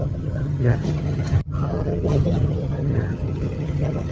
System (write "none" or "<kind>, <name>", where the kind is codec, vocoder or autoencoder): vocoder, HiFi-GAN